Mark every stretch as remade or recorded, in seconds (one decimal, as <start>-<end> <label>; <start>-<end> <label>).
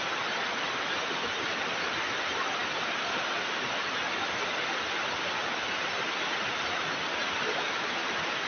0.0-8.5 recorded